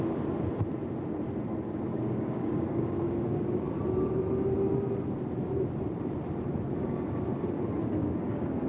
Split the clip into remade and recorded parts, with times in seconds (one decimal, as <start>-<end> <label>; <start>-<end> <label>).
0.0-1.9 recorded; 1.9-3.8 remade; 3.8-8.0 recorded; 8.0-8.7 remade